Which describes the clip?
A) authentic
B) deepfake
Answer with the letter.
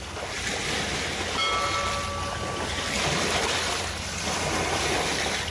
A